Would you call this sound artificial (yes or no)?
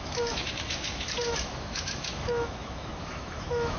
yes